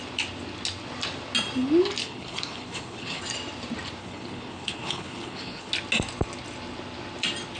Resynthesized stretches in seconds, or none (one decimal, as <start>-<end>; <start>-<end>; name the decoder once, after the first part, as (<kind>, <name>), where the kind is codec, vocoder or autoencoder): 2.0-3.2 (codec, HILCodec); 4.0-5.7